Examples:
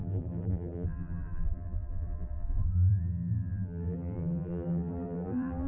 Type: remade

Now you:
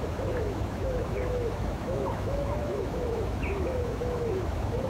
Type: remade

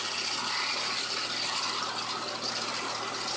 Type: recorded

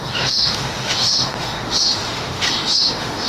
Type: remade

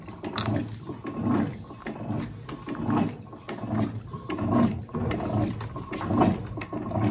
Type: recorded